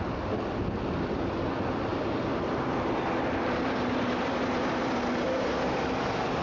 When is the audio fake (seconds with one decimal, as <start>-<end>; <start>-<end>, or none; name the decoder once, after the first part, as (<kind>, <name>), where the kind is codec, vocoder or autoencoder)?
none